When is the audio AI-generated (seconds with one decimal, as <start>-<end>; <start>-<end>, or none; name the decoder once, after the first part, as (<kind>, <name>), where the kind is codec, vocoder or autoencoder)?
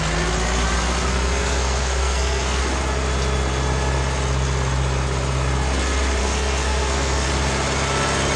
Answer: 1.1-2.6 (codec, SNAC); 6.2-7.3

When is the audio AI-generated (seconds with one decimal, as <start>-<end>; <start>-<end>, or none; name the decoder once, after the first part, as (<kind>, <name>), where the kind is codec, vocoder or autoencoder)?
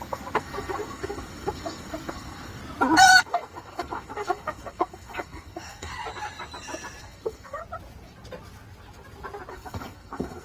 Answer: 0.0-2.6 (codec, SNAC); 3.2-5.9; 7.0-7.6; 9.5-10.4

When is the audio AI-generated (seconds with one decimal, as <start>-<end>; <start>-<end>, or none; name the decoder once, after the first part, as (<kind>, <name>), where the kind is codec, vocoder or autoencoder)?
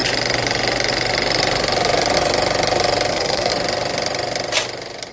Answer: 3.1-3.5 (codec, SNAC)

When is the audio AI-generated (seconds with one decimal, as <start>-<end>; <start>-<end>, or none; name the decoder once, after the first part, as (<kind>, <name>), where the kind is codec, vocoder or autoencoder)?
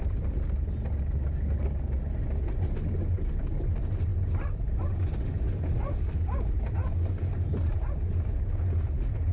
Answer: none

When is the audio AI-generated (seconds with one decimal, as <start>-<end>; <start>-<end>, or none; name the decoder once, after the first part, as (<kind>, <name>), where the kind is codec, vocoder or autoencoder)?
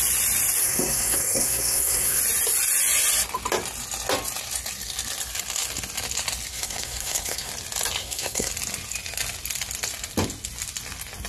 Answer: 0.6-2.2 (codec, SNAC); 6.5-7.5; 8.0-8.5